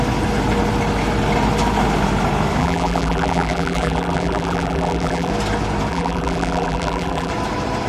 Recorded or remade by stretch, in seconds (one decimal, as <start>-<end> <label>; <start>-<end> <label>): 0.0-2.6 recorded; 2.6-5.3 remade; 5.3-5.9 recorded; 5.9-7.3 remade; 7.3-7.9 recorded